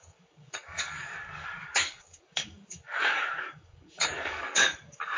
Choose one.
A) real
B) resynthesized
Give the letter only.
B